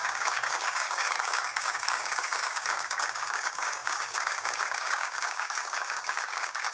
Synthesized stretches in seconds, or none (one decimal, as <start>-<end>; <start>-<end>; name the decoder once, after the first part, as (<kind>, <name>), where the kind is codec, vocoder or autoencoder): 0.0-6.7 (codec, DAC)